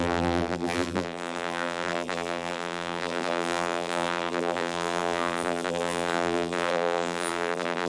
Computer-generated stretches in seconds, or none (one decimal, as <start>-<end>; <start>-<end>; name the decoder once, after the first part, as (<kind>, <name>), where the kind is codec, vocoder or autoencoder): 0.0-7.9 (vocoder, BigVGAN v2)